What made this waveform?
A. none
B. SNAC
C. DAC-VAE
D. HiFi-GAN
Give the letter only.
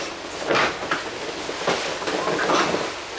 A